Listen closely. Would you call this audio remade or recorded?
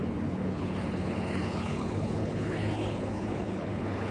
remade